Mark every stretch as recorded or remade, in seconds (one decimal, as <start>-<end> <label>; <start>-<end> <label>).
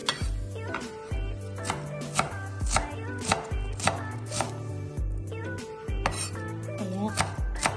0.0-7.8 recorded